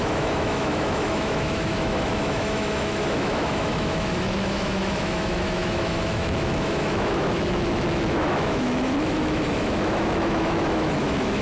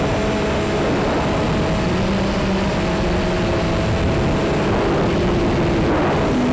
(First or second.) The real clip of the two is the second